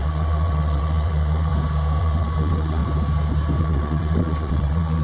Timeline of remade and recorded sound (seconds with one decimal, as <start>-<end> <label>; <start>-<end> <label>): 0.0-1.5 remade; 1.5-2.0 recorded; 2.0-2.8 remade; 2.8-3.6 recorded; 3.6-5.0 remade